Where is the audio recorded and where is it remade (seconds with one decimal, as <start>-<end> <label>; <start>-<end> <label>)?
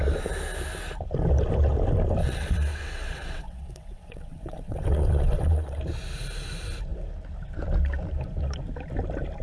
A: 0.0-2.2 recorded; 2.2-5.8 remade; 5.8-9.4 recorded